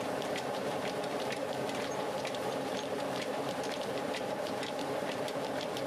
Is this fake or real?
fake